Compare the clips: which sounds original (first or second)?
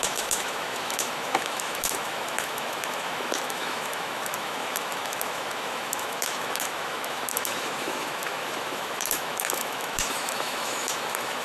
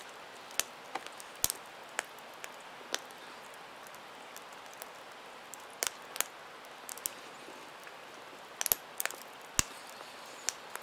second